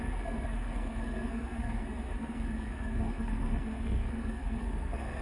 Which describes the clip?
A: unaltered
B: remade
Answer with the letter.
B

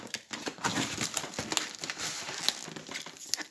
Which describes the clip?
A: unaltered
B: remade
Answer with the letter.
A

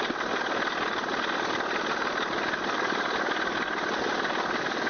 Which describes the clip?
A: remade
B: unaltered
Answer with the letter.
B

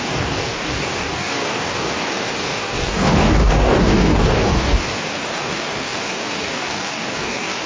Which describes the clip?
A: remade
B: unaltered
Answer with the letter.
A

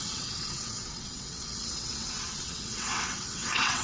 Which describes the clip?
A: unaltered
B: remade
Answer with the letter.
B